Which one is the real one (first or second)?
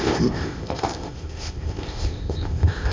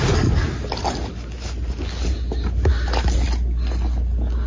second